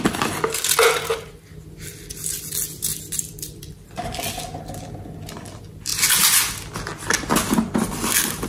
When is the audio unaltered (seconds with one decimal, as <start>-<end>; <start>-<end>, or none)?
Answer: 0.0-2.9; 4.0-8.5